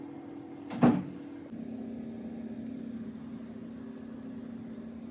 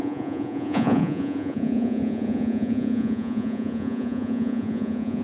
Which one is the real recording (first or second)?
first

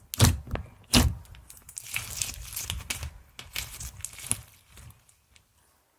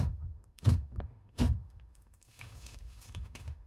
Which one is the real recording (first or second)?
first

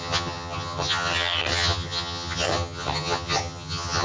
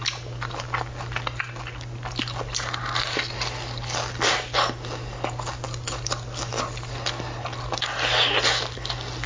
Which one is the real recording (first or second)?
second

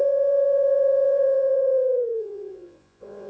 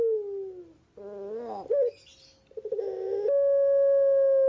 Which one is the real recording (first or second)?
second